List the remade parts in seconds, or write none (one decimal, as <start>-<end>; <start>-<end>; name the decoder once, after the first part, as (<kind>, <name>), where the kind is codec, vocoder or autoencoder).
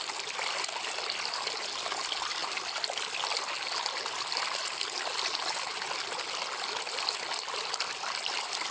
none